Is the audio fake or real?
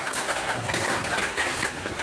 fake